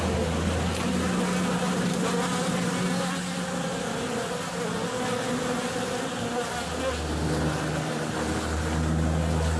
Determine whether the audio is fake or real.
real